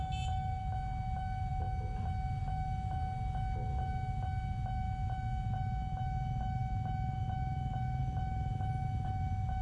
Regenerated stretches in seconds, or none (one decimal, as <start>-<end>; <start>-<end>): none